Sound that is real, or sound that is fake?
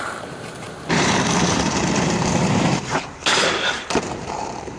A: fake